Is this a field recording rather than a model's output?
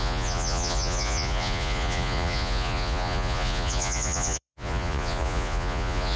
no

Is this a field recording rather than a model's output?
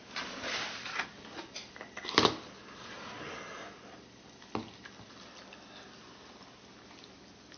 yes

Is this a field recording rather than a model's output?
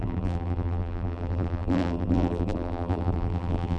no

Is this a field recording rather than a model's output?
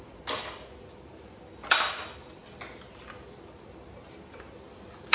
yes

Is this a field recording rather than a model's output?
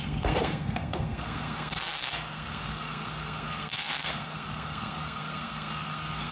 no